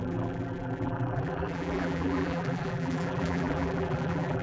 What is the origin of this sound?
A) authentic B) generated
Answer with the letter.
B